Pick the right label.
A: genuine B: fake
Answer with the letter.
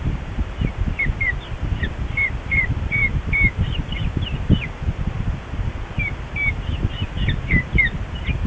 A